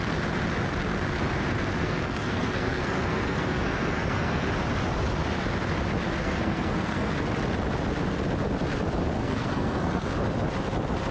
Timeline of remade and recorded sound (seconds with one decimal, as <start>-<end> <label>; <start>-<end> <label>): 0.0-1.8 recorded; 1.8-4.5 remade; 4.5-6.2 recorded; 6.2-7.1 remade; 7.1-9.2 recorded; 9.2-10.1 remade; 10.1-11.1 recorded